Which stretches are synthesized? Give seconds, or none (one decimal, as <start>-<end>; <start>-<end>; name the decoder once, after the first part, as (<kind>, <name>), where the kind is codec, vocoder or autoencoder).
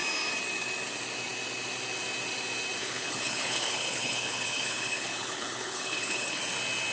2.8-6.4 (codec, HILCodec)